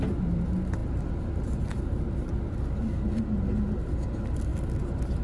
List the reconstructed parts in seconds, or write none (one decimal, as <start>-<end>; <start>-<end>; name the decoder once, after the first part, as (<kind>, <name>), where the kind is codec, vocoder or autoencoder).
none

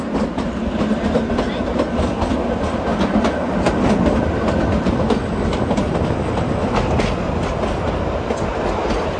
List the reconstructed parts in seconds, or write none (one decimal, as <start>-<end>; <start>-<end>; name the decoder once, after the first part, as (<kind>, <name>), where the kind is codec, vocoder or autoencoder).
none

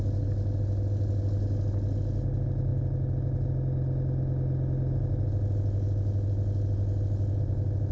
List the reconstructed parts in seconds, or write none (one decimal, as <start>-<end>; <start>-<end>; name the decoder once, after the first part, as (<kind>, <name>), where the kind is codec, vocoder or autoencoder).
none

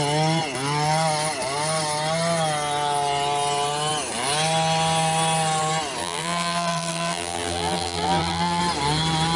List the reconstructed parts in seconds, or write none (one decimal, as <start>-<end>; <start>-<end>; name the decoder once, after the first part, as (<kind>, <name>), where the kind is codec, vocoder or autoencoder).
6.0-8.6 (vocoder, BigVGAN v2)

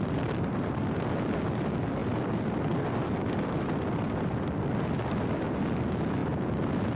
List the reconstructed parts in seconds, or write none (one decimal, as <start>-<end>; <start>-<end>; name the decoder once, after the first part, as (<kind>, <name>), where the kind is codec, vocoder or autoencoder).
none

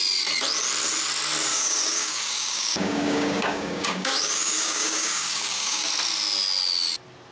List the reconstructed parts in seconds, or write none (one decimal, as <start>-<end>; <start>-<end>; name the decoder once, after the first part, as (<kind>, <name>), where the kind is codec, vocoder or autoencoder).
1.5-5.9 (codec, DAC)